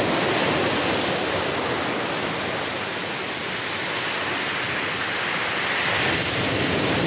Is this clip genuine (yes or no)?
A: yes